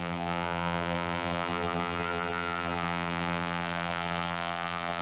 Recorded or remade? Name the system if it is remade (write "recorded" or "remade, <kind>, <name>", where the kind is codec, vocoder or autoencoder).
remade, vocoder, BigVGAN v2